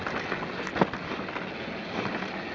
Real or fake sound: real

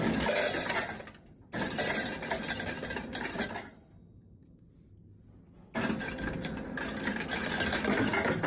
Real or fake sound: real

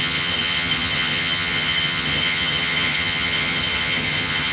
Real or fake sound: fake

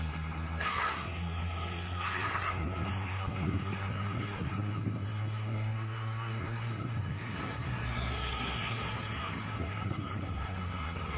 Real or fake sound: fake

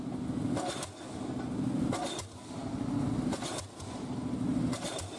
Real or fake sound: real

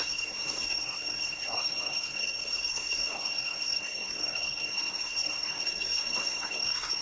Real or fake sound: fake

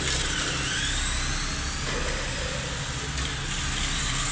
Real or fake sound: real